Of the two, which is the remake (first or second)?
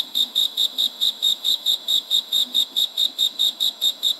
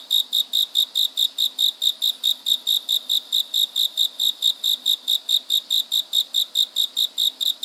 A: first